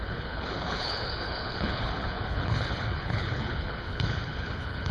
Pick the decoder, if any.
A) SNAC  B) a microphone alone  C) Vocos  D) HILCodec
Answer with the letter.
D